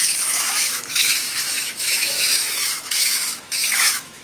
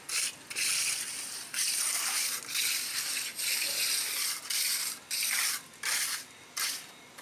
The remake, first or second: first